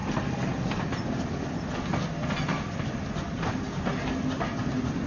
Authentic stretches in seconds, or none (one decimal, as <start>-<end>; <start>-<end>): 0.0-5.1